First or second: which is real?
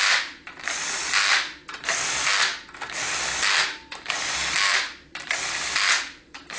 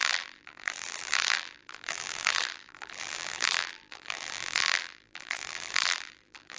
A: first